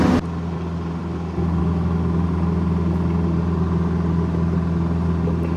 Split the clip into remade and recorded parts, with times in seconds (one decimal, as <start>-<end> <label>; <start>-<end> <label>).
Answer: 0.0-5.6 recorded